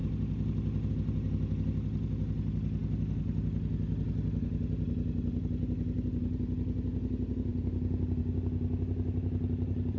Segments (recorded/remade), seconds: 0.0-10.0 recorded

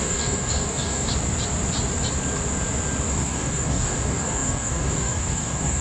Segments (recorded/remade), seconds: 0.0-1.1 remade; 1.1-3.1 recorded; 3.1-5.8 remade

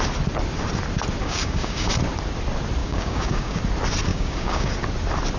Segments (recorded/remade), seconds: 0.0-1.2 recorded; 1.2-1.9 remade; 1.9-2.8 recorded; 2.8-3.6 remade; 3.6-4.1 recorded; 4.1-4.7 remade; 4.7-5.4 recorded

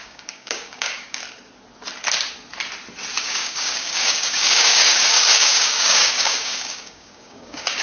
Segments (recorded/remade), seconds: 0.0-1.2 remade; 1.2-3.2 recorded; 3.2-7.8 remade

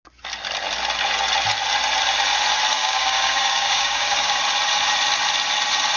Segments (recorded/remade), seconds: 0.0-2.8 recorded; 2.8-4.4 remade; 4.4-6.0 recorded

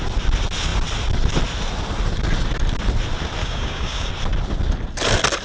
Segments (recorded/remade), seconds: 0.0-3.4 recorded; 3.4-4.1 remade; 4.1-5.4 recorded